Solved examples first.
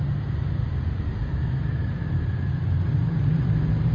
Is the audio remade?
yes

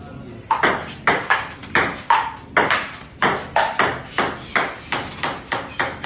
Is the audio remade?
no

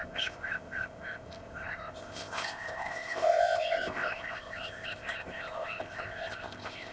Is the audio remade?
yes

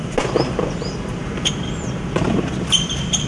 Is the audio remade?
no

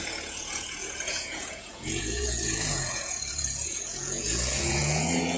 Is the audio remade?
yes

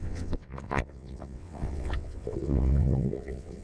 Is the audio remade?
yes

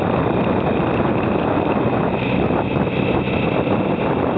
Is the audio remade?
no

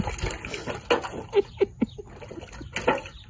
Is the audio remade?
no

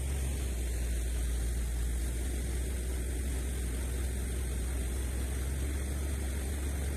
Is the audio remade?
no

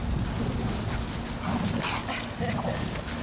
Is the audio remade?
no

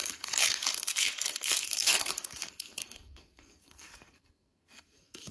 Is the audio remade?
yes